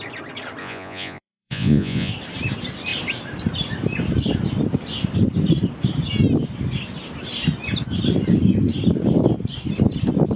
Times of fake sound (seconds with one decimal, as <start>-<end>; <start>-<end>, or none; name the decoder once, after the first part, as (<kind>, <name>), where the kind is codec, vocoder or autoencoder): 0.6-2.1 (vocoder, Vocos)